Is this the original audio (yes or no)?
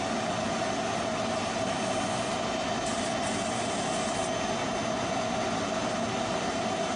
yes